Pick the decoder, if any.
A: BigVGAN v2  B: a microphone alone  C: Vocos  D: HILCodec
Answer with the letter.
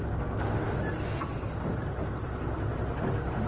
B